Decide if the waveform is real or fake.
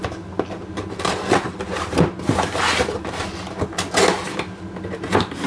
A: real